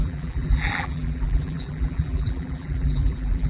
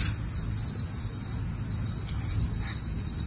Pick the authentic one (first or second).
second